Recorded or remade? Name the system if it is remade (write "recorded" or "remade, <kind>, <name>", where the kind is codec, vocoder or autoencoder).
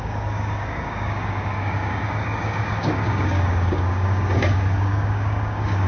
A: remade, codec, DAC